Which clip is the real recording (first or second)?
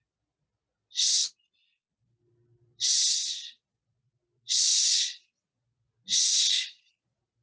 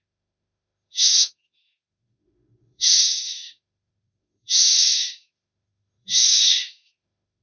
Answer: first